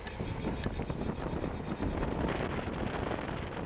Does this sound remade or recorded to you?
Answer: recorded